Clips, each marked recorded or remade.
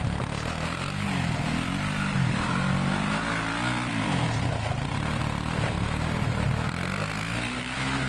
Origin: recorded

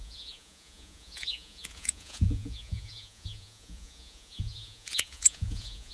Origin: remade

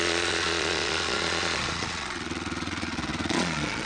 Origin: remade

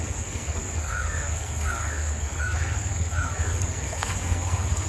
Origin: remade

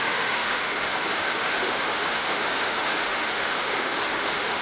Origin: remade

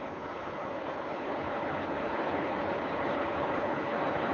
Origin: remade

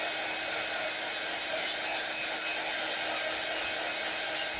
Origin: recorded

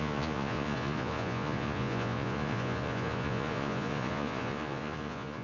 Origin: remade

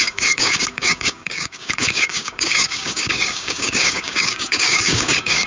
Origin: remade